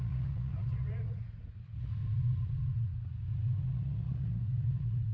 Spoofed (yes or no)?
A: yes